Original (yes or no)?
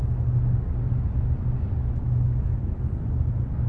yes